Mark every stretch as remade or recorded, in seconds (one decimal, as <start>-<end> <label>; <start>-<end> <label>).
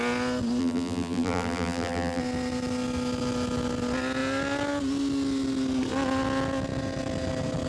0.0-0.6 recorded; 0.6-2.2 remade; 2.2-7.7 recorded